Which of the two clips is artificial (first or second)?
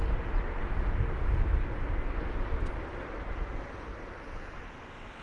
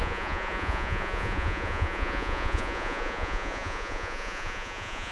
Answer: second